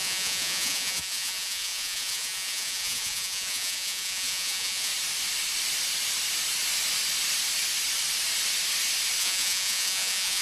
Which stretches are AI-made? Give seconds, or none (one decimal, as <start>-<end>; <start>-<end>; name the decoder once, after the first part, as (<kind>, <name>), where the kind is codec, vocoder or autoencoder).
0.0-4.9 (vocoder, Vocos); 9.2-10.4